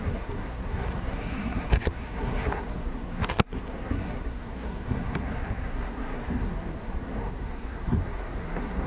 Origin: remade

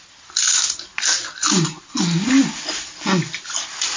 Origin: recorded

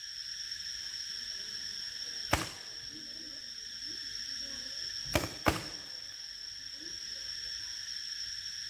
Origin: recorded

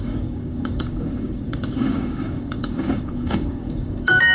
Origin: remade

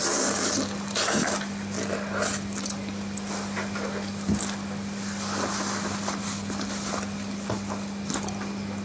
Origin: recorded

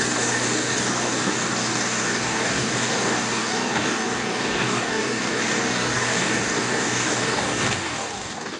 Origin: remade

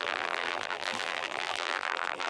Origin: remade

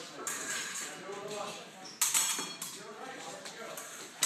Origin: recorded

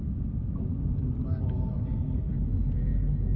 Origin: recorded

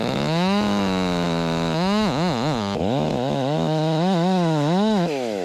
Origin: remade